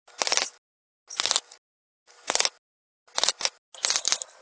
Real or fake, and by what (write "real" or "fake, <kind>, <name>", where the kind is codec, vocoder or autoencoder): real